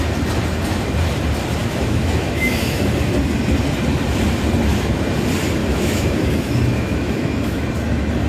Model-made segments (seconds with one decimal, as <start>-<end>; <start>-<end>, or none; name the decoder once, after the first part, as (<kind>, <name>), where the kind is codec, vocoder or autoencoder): 1.6-2.8 (autoencoder, DAC-VAE); 5.6-7.7

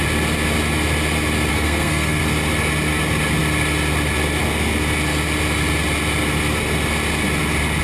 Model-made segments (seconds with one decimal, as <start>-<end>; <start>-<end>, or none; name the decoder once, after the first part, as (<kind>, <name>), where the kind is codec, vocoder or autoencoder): 1.5-2.2 (codec, SNAC)

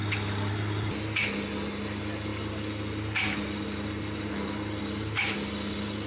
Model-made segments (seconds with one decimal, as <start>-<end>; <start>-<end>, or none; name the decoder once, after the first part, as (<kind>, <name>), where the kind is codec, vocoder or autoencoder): none

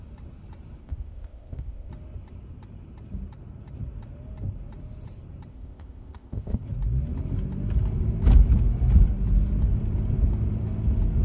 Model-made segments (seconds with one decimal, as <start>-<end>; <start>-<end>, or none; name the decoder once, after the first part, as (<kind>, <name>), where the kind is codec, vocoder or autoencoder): 0.8-1.9 (codec, ZipCodec); 5.5-6.6

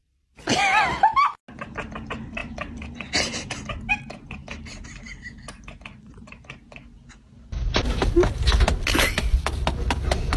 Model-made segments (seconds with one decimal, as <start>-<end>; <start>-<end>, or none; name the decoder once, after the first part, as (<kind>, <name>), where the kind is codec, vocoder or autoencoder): 0.0-0.9 (vocoder, BigVGAN v2); 2.4-3.9

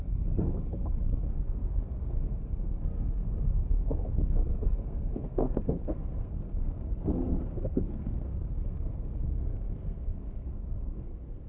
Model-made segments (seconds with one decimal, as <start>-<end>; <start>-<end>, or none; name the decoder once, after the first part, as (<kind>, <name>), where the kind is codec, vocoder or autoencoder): 0.0-3.6 (codec, SNAC); 4.1-11.5

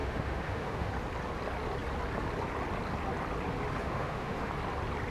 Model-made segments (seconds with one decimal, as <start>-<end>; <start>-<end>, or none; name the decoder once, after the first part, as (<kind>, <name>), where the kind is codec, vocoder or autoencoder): 0.0-0.9 (autoencoder, DAC-VAE); 3.8-4.5

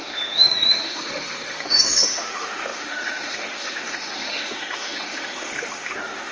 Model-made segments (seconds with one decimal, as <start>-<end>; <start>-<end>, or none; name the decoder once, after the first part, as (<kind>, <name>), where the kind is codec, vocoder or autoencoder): 0.0-6.3 (autoencoder, DAC-VAE)